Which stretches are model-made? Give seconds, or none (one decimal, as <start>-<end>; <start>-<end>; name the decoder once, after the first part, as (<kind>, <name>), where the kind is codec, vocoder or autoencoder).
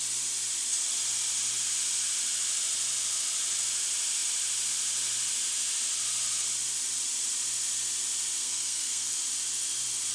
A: 8.4-9.2 (codec, SNAC)